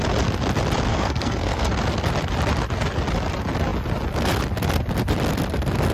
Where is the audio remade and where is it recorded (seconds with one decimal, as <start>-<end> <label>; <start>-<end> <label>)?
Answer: 0.0-0.9 recorded; 0.9-1.7 remade; 1.7-5.9 recorded